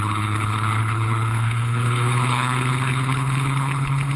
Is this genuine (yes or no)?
no